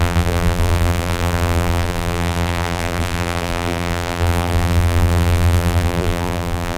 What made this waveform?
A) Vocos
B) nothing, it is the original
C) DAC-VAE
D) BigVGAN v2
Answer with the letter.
D